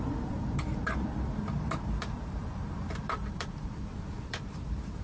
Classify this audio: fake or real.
fake